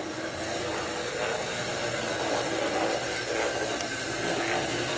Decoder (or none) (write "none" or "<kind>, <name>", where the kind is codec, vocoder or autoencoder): none